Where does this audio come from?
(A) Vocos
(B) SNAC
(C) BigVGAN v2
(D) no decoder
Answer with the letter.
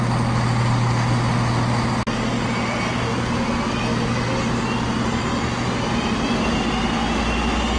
D